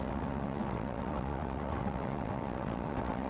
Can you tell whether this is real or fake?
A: fake